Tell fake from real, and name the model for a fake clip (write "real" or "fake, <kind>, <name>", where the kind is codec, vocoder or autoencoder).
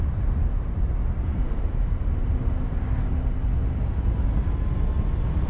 real